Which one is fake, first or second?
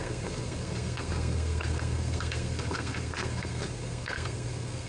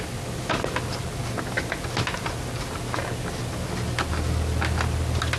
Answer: first